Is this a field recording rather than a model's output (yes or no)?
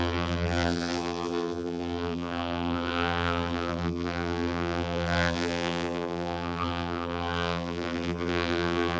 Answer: no